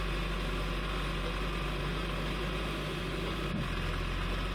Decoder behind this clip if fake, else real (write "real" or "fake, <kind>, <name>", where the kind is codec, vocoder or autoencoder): real